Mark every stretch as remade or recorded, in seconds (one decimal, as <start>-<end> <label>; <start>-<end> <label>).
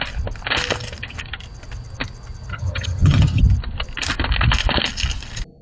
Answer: 0.0-2.5 recorded; 2.5-3.4 remade; 3.4-5.6 recorded